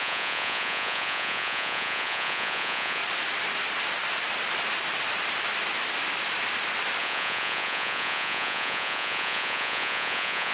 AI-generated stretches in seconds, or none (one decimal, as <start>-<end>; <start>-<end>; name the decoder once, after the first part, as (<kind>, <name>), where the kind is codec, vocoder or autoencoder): 0.0-3.0 (vocoder, Vocos); 7.0-10.5